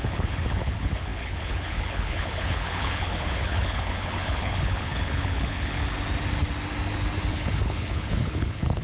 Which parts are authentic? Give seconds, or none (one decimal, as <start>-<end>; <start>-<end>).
5.8-7.3